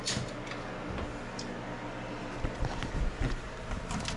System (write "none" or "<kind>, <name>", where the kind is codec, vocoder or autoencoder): none